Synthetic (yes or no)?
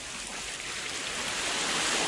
no